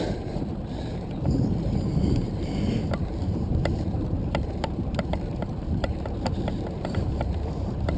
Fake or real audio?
fake